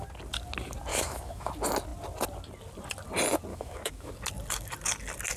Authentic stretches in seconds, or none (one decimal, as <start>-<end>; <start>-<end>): 0.0-0.9; 1.5-3.5; 4.1-5.4